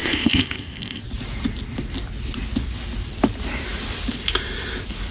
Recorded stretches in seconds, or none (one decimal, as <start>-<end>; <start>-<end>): 1.0-5.1